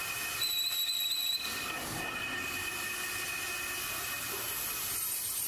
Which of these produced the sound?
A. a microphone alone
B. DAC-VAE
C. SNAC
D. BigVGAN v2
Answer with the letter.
A